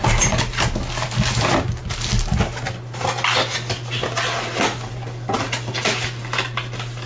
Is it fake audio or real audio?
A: real